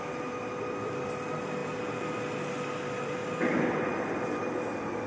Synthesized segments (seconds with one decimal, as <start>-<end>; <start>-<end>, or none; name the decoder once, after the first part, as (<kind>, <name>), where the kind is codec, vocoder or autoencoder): none